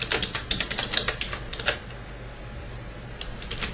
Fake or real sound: real